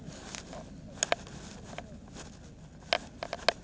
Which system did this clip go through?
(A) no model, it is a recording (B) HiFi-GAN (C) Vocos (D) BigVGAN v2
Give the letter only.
A